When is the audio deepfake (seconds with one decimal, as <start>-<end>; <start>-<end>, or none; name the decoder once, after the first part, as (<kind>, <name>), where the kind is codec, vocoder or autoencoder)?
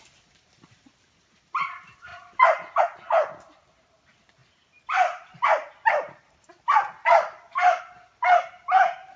none